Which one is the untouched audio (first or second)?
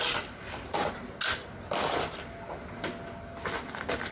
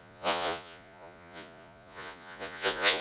first